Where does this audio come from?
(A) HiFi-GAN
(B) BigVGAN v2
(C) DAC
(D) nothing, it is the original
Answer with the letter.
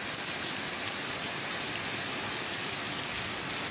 D